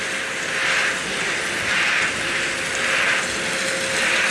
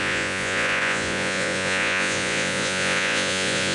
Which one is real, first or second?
first